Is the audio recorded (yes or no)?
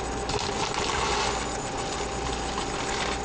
yes